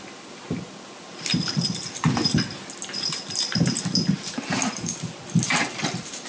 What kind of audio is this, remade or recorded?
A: recorded